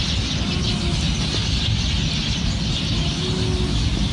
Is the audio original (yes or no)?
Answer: yes